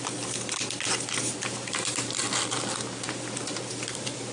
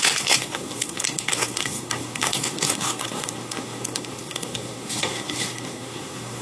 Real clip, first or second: first